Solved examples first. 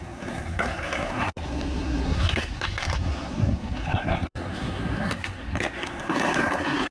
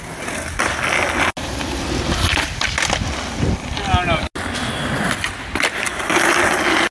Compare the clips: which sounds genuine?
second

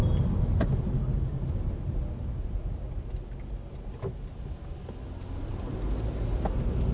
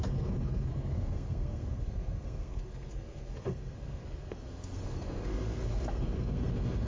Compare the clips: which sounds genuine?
first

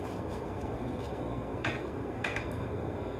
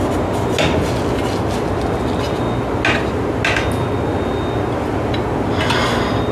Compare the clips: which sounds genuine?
second